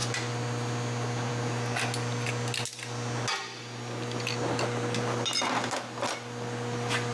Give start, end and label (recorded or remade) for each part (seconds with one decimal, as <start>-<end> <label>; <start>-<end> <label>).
0.0-7.1 recorded